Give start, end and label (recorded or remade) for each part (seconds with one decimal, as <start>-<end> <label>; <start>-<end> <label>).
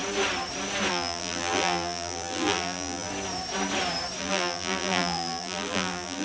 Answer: 0.0-0.9 recorded; 0.9-3.1 remade; 3.1-4.2 recorded; 4.2-6.2 remade